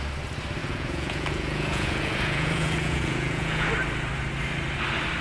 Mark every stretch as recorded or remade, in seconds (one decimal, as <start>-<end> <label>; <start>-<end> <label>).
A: 0.0-0.6 recorded; 0.6-3.7 remade; 3.7-5.2 recorded